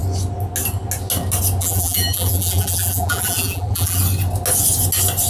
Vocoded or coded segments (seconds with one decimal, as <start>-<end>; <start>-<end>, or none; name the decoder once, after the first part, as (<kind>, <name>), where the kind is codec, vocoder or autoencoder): 1.6-4.0 (vocoder, BigVGAN v2)